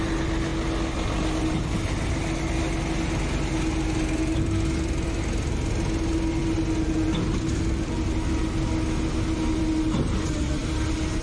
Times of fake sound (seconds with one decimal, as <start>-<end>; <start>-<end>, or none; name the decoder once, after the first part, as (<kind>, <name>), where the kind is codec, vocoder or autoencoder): none